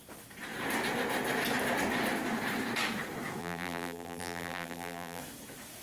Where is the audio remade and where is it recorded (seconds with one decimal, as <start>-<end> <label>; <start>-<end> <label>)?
0.0-3.4 recorded; 3.4-5.2 remade; 5.2-5.8 recorded